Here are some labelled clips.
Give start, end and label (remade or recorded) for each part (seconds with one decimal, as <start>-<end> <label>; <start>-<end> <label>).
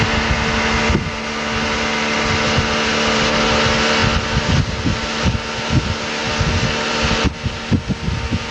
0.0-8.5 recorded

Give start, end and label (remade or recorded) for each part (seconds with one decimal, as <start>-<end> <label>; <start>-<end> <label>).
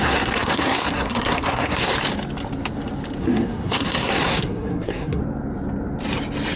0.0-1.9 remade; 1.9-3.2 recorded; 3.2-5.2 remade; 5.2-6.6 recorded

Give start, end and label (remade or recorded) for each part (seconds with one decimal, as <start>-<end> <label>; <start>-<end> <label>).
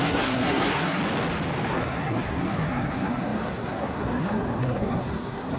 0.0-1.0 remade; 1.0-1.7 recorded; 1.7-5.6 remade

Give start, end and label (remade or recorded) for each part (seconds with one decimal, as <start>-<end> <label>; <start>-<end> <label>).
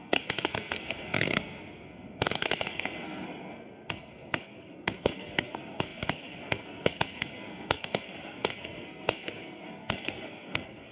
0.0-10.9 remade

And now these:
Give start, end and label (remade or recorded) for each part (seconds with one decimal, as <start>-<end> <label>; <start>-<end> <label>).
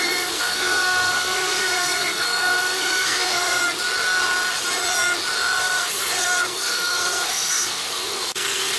0.0-3.6 remade; 3.6-5.6 recorded; 5.6-8.8 remade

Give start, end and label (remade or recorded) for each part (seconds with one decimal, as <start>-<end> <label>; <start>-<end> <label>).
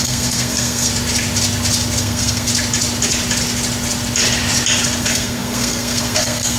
0.0-0.9 remade; 0.9-2.0 recorded; 2.0-2.5 remade; 2.5-5.0 recorded; 5.0-6.6 remade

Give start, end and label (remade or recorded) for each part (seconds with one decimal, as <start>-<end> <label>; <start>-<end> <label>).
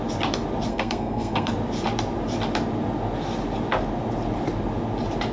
0.0-0.7 recorded; 0.7-1.5 remade; 1.5-5.3 recorded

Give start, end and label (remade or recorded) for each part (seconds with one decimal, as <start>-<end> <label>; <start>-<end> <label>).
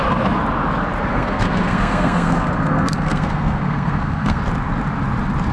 0.0-1.1 recorded; 1.1-4.4 remade; 4.4-5.5 recorded